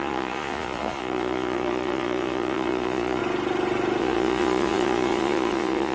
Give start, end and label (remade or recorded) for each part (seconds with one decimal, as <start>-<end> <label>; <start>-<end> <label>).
0.0-3.2 remade; 3.2-4.0 recorded; 4.0-5.9 remade